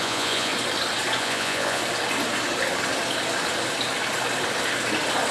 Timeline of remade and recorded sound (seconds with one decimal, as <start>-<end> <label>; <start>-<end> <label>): 0.0-0.5 remade; 0.5-1.2 recorded; 1.2-1.8 remade; 1.8-5.3 recorded